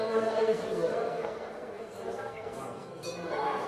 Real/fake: fake